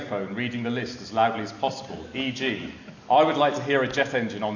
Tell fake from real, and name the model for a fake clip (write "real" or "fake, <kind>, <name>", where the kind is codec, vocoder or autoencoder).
real